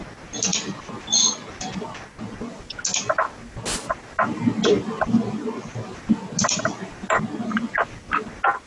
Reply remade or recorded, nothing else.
recorded